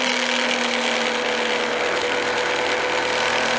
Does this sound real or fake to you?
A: real